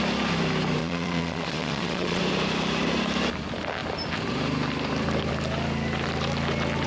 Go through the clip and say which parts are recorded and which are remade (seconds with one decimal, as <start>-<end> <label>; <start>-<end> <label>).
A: 0.0-0.8 recorded; 0.8-2.2 remade; 2.2-6.9 recorded